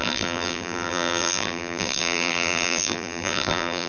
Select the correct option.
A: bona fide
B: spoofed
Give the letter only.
B